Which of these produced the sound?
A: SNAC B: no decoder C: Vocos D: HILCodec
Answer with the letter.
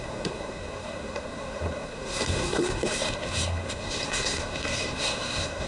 A